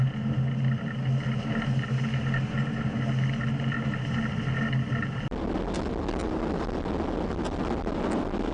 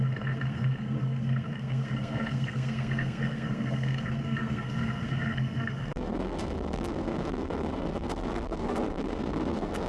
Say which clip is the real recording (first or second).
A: first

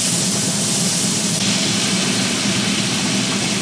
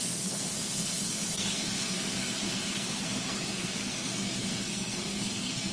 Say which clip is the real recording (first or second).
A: first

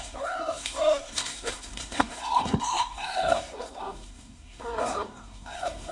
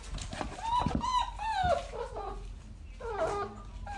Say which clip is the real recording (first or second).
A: second